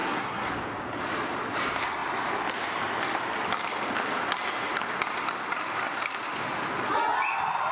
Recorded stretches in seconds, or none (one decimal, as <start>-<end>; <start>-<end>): 0.5-7.7

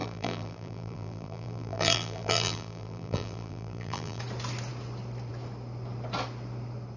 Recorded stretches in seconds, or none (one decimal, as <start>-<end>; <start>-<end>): 4.2-7.0

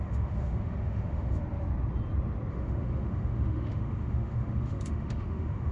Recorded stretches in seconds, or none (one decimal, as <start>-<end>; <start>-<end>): 1.4-2.5

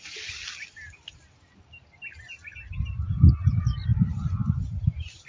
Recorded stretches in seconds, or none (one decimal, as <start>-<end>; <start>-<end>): 0.0-3.9

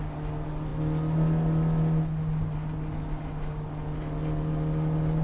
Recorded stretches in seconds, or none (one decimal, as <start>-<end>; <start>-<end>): 0.0-5.2

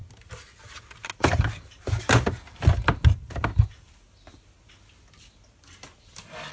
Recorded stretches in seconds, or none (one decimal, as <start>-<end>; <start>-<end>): 0.0-6.5